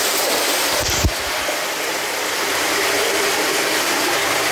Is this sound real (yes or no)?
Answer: yes